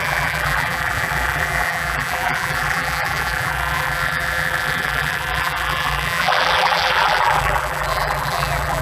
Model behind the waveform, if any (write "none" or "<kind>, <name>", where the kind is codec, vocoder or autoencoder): vocoder, BigVGAN v2